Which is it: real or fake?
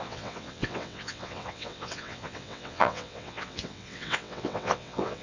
fake